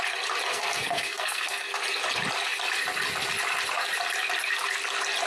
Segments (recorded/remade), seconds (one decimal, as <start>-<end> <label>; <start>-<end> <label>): 0.0-0.5 recorded; 0.5-1.7 remade; 1.7-5.3 recorded